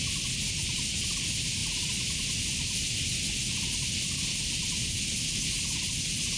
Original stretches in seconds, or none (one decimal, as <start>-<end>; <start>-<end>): 0.0-6.4